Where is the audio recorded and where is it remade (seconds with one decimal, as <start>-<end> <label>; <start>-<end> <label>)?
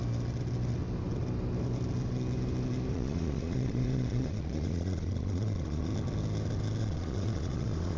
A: 0.0-2.9 recorded; 2.9-5.9 remade; 5.9-6.8 recorded; 6.8-8.0 remade